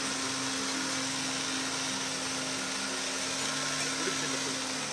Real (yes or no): yes